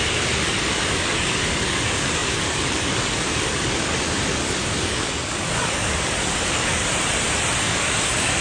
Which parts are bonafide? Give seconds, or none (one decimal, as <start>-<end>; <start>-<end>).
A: 6.8-7.6